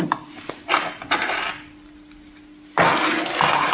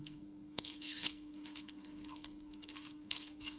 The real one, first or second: first